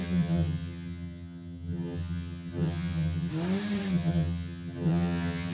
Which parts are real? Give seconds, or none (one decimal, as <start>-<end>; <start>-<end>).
3.3-3.9

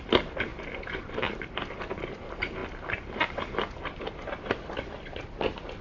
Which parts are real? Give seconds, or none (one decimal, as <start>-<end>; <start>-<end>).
0.0-5.8

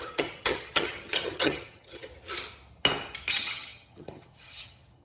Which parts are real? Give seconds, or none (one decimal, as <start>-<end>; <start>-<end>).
2.1-3.3

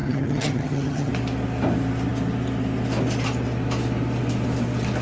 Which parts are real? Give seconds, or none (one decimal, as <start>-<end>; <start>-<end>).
1.1-5.0

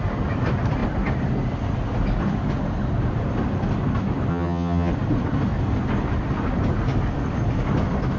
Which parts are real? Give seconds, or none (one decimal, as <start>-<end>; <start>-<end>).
0.0-4.3; 4.9-8.2

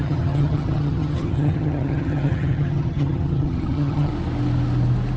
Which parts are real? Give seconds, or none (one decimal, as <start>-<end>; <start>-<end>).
4.1-5.2

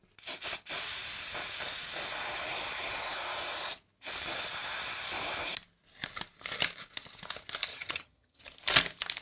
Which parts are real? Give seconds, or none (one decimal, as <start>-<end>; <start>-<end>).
0.0-7.7; 8.4-9.2